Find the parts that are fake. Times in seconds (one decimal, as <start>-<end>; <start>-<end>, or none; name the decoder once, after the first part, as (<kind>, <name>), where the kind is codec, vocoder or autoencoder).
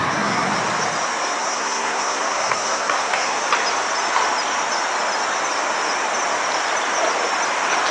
0.0-0.5 (codec, SNAC); 1.4-3.4